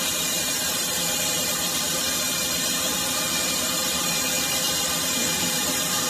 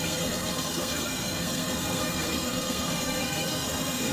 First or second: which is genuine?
first